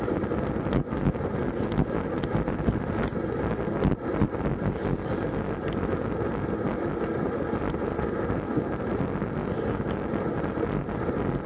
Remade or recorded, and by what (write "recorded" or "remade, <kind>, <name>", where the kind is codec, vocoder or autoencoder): recorded